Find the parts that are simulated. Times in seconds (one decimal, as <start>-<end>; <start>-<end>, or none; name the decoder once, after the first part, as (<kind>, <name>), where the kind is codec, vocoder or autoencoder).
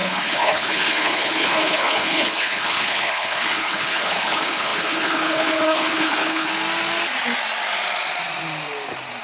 0.0-6.5 (codec, HILCodec)